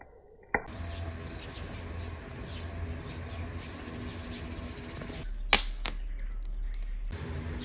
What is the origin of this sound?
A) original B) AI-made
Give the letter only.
A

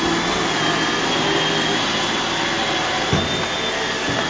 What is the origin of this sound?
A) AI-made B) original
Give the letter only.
B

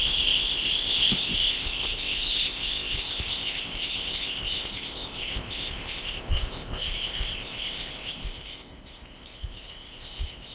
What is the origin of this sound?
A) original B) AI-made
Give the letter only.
B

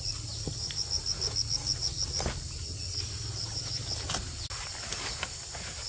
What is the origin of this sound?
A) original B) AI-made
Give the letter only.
A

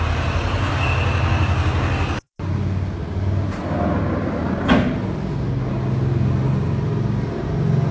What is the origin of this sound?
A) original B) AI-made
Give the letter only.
A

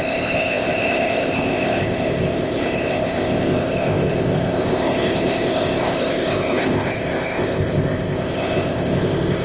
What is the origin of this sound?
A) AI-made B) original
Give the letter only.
A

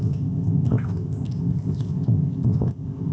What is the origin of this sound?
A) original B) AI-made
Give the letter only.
B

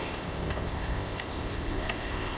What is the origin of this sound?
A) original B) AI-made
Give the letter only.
B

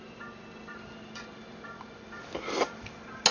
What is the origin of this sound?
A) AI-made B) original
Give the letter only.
B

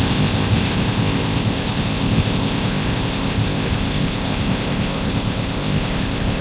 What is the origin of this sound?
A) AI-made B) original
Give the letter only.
A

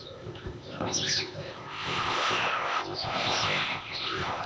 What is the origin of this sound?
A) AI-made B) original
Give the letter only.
A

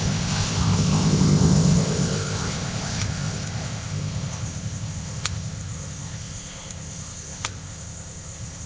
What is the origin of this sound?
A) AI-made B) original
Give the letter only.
A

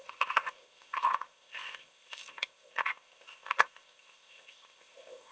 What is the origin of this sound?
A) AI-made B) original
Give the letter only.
A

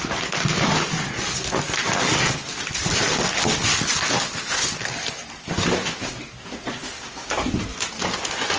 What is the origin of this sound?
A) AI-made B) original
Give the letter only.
B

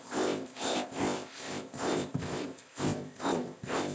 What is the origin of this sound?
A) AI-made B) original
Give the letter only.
A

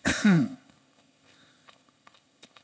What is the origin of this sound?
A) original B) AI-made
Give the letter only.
B